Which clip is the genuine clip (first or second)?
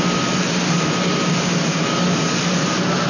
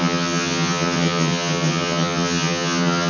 first